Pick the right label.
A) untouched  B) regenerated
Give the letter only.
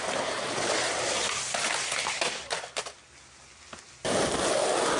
A